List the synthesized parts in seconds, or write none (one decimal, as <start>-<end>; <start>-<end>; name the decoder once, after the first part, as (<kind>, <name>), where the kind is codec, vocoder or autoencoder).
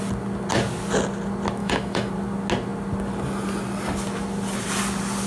1.6-2.1 (autoencoder, DAC-VAE)